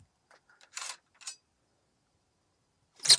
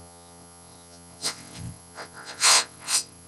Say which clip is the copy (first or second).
second